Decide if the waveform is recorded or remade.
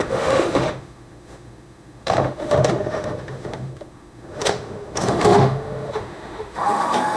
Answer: remade